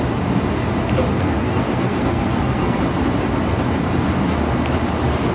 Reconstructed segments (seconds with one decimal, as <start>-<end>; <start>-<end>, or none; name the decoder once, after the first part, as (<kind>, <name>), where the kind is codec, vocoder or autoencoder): 1.1-2.8 (codec, SNAC)